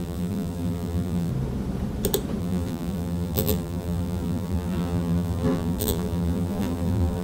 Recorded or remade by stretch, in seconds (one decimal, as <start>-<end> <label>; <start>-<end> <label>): 0.0-1.3 remade; 1.3-2.4 recorded; 2.4-7.2 remade